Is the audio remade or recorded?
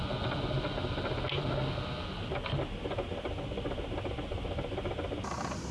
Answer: recorded